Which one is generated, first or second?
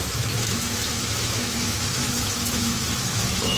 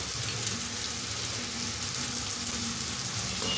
first